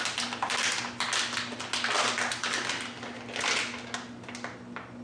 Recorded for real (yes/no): yes